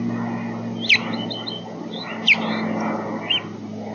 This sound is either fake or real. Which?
real